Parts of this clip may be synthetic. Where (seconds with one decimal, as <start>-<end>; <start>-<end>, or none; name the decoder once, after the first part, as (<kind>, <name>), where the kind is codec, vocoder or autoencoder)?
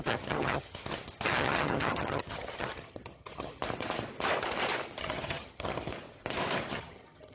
0.0-3.6 (vocoder, HiFi-GAN); 5.0-5.9; 6.7-7.3